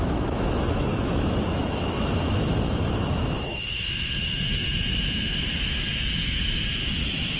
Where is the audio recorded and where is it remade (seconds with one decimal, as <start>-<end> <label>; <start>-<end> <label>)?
0.0-7.4 remade